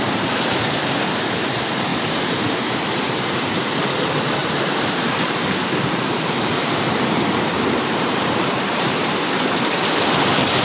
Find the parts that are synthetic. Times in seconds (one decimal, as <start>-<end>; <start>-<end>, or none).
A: 1.9-3.6; 4.4-9.1